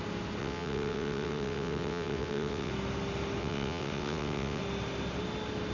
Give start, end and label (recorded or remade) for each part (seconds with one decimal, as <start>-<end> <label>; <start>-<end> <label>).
0.0-0.4 recorded; 0.4-2.7 remade; 2.7-3.4 recorded; 3.4-4.6 remade; 4.6-5.7 recorded